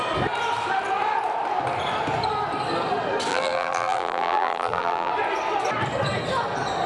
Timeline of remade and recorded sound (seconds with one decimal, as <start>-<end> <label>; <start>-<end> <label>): 0.0-3.3 recorded; 3.3-5.1 remade; 5.1-6.9 recorded